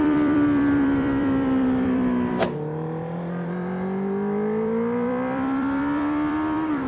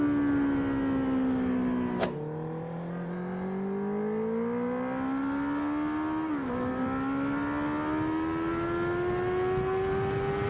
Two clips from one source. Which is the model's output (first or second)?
first